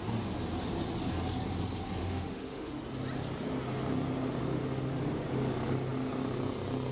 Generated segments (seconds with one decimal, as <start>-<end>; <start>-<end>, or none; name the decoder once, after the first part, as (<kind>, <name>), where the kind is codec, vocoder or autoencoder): 2.0-2.8 (autoencoder, DAC-VAE); 4.4-4.9